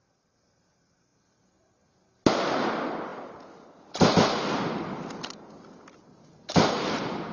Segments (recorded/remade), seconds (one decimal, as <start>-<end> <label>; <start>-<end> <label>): 0.0-7.3 recorded